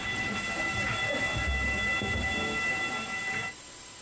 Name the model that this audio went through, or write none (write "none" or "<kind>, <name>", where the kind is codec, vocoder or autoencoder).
none